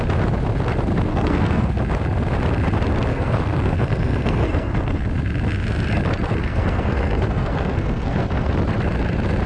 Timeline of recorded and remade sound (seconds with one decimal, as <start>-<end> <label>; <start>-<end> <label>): 0.0-1.1 recorded; 1.1-1.7 remade; 1.7-3.1 recorded; 3.1-5.1 remade; 5.1-6.4 recorded; 6.4-8.5 remade; 8.5-9.5 recorded